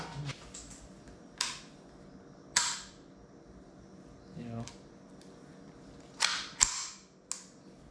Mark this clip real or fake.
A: real